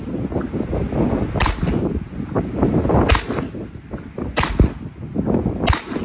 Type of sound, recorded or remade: recorded